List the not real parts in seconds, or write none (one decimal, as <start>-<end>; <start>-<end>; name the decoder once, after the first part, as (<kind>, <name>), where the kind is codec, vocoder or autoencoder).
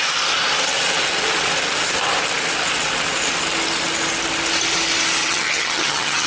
5.2-6.3 (vocoder, HiFi-GAN)